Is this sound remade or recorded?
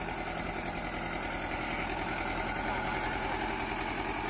recorded